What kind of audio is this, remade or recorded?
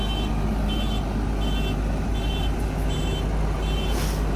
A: recorded